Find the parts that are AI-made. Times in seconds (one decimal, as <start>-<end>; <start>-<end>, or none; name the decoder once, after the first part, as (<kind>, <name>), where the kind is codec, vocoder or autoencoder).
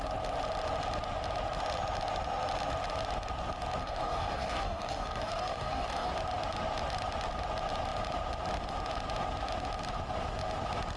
3.8-6.1 (codec, DAC)